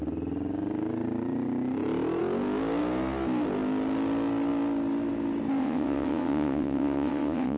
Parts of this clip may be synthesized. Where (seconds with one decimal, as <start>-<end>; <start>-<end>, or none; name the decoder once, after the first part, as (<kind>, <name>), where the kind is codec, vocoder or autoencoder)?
5.6-7.6 (vocoder, WaveNeXt)